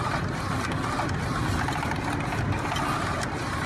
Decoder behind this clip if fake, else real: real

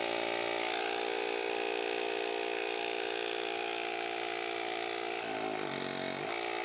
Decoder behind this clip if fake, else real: fake, vocoder, BigVGAN v2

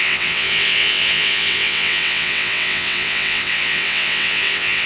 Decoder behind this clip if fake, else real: fake, vocoder, WaveNeXt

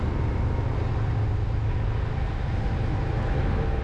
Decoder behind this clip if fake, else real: real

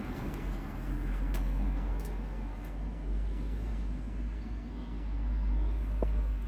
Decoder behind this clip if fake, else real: fake, codec, SNAC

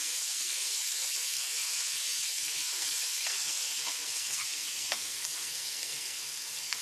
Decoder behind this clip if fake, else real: fake, codec, SNAC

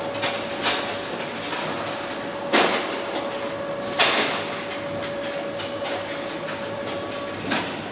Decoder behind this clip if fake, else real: real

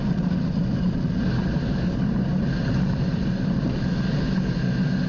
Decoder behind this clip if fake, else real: real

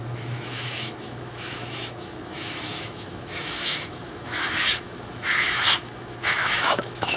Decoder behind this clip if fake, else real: fake, autoencoder, DAC-VAE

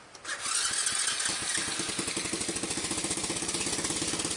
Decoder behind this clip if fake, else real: real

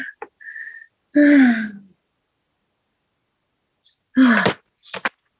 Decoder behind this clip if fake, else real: real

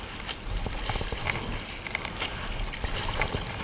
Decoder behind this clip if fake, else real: real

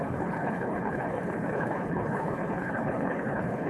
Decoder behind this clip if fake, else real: fake, codec, HILCodec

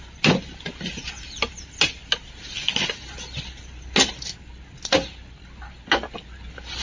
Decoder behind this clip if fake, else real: real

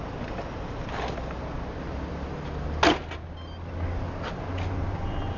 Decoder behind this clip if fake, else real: real